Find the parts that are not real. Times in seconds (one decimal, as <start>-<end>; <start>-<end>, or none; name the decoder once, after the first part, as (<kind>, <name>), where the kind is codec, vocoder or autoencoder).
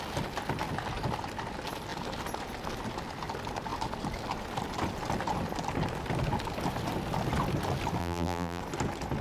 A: 8.0-8.6 (vocoder, BigVGAN v2)